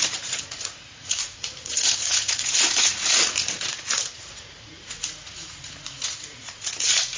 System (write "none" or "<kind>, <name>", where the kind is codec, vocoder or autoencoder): vocoder, Vocos